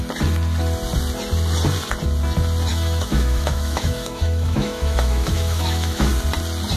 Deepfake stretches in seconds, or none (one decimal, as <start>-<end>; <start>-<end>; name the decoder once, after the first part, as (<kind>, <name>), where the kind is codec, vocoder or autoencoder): 2.7-6.1 (autoencoder, DAC-VAE)